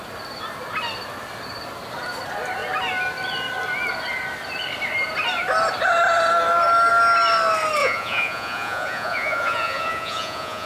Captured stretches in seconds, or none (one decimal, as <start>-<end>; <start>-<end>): 0.0-7.8